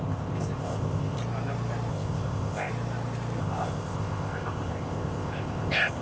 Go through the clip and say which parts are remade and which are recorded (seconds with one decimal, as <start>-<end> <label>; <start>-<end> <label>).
0.0-1.2 remade; 1.2-1.9 recorded; 1.9-2.7 remade; 2.7-3.4 recorded; 3.4-6.0 remade